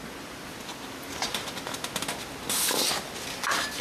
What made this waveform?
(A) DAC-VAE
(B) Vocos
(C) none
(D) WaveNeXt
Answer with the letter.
C